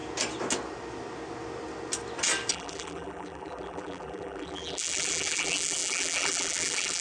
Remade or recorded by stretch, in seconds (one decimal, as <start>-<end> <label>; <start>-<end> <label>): 0.0-2.5 recorded; 2.5-7.0 remade